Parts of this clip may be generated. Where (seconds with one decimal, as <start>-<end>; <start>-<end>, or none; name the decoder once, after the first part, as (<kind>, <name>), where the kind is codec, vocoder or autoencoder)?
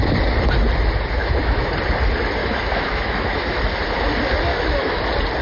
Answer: 1.2-1.7 (autoencoder, DAC-VAE); 2.4-3.6; 4.5-5.0